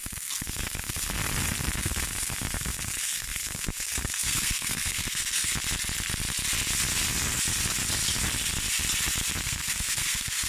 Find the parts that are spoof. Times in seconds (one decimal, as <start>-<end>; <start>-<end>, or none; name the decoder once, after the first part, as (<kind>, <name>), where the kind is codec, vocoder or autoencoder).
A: 0.0-1.2 (codec, SNAC); 1.8-5.6; 9.4-10.5